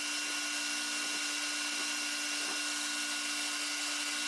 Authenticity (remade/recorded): recorded